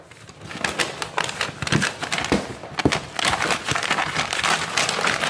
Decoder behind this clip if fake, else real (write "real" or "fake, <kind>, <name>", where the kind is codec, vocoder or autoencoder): real